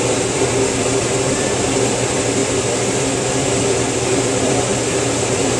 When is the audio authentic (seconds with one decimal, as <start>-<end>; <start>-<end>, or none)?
2.4-3.0